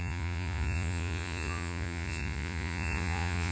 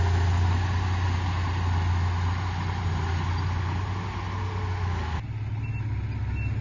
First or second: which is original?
second